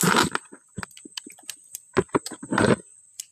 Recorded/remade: recorded